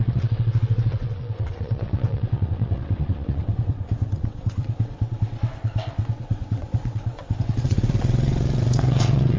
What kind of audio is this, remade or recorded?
remade